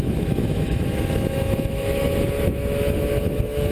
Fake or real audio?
fake